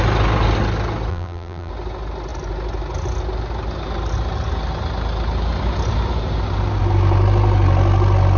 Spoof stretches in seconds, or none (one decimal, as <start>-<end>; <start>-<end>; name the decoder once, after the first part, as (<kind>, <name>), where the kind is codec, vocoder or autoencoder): 1.1-1.7 (vocoder, BigVGAN v2)